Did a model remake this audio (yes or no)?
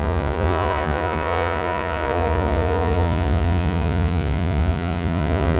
yes